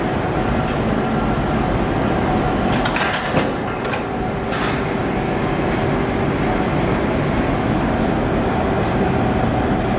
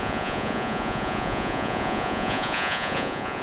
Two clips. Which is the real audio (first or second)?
first